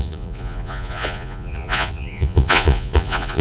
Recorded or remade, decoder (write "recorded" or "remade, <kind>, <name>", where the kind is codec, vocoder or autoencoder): remade, vocoder, Vocos